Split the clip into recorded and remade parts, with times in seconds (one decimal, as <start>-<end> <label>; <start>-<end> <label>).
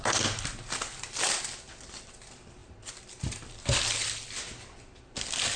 0.0-5.6 recorded